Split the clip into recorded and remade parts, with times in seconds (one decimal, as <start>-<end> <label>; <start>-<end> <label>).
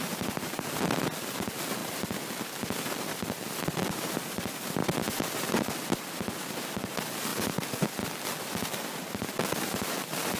0.0-1.8 recorded; 1.8-4.3 remade; 4.3-7.3 recorded; 7.3-8.0 remade; 8.0-10.4 recorded